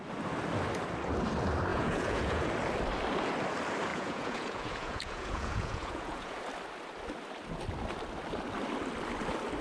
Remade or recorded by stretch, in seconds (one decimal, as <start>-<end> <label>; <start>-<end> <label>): 0.0-1.7 recorded; 1.7-2.5 remade; 2.5-3.9 recorded; 3.9-6.4 remade; 6.4-9.6 recorded